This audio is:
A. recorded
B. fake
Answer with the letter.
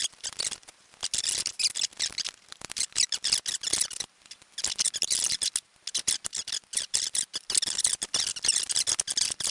A